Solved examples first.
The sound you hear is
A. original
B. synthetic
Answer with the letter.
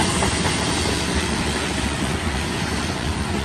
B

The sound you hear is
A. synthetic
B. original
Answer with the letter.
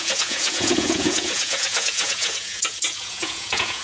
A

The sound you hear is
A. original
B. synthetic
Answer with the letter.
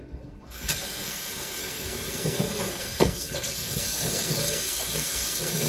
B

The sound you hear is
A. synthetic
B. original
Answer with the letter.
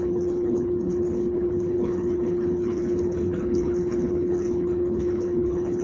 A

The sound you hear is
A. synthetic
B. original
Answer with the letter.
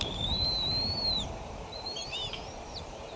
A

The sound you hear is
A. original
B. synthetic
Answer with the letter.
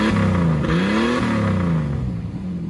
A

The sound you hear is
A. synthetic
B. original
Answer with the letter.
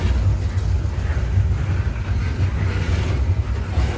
B